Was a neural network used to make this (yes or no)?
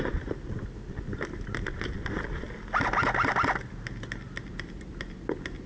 no